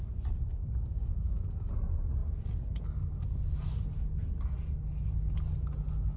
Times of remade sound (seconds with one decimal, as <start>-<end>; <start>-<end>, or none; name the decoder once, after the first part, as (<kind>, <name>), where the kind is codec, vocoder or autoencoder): 0.6-1.7 (codec, DAC)